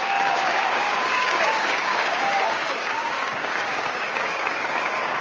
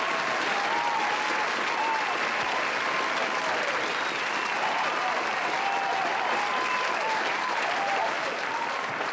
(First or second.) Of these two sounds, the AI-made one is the first